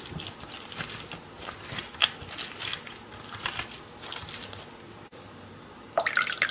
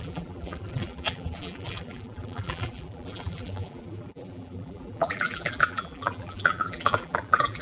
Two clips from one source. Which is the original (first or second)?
first